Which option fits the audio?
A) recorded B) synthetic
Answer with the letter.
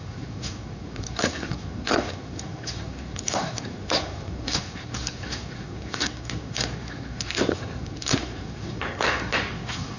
B